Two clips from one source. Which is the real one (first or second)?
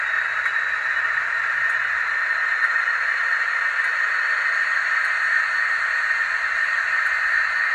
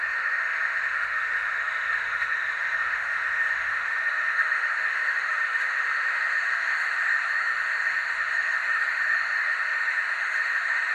first